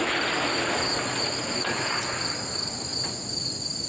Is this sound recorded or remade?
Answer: recorded